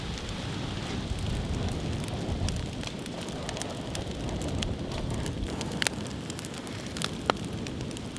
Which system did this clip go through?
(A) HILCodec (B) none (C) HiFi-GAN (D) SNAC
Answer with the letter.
B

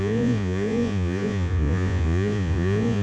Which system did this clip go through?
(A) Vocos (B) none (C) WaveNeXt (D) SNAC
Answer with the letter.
A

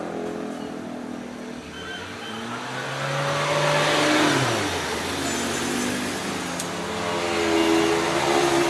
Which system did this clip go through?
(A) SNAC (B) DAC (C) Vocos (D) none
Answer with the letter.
D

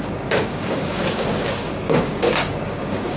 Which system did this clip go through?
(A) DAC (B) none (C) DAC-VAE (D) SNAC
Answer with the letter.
A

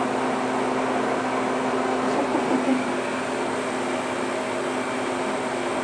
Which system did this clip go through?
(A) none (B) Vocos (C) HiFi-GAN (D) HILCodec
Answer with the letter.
A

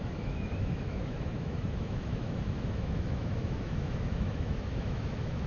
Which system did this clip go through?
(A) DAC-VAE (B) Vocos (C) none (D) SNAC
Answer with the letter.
A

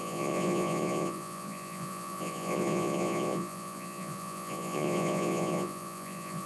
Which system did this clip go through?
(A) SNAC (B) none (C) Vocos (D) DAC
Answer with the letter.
C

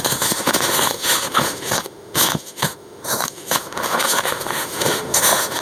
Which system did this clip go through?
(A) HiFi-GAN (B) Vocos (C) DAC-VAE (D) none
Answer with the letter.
C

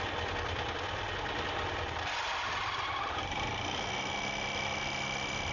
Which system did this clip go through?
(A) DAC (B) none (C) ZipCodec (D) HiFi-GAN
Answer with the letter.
B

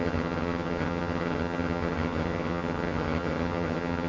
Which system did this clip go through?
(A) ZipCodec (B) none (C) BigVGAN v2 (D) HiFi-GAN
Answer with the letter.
D